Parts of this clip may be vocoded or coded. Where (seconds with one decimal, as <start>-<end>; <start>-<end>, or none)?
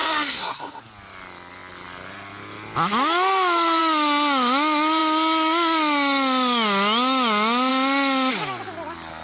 0.0-0.8